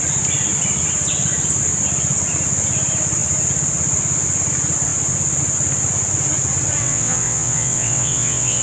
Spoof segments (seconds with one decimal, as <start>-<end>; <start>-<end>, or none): 6.8-8.6